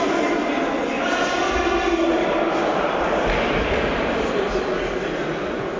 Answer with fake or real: real